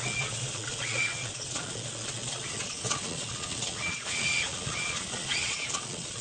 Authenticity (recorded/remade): remade